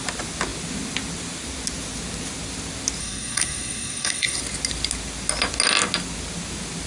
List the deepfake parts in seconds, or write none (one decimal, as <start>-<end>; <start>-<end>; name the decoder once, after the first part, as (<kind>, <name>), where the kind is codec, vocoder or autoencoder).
3.0-4.4 (codec, SNAC)